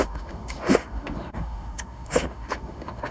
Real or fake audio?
fake